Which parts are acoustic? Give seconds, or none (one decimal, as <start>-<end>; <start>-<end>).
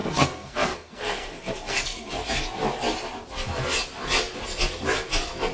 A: 2.1-5.5